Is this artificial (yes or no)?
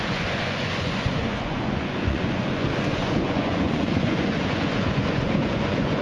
yes